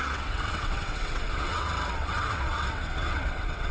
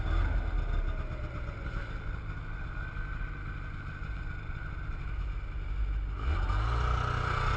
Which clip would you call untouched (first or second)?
second